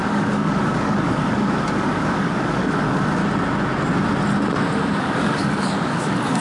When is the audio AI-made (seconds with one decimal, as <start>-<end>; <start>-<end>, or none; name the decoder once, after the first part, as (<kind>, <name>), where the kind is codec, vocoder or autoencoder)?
0.0-3.2 (codec, DAC); 5.0-6.4